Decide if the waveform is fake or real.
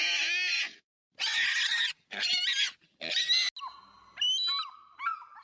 real